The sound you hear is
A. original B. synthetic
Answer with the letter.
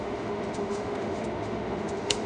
B